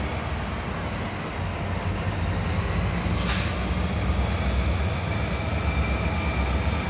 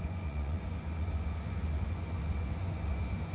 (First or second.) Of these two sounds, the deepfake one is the second